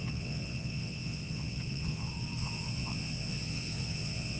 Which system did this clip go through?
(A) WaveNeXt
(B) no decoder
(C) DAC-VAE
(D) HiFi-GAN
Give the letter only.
A